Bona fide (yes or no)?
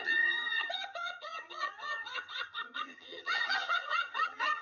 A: no